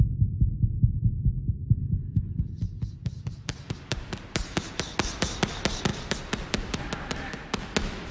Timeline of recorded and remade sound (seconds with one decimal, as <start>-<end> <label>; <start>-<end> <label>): 0.0-3.0 recorded; 3.0-4.6 remade; 4.6-5.9 recorded; 5.9-6.8 remade; 6.8-8.1 recorded